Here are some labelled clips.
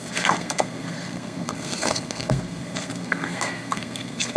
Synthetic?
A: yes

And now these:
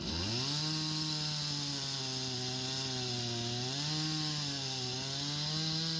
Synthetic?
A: no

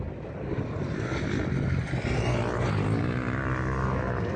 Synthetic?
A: no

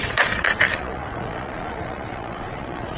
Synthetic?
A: yes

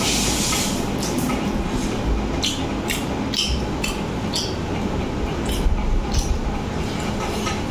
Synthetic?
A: no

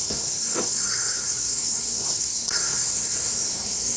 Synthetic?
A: yes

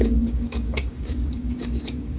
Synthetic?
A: yes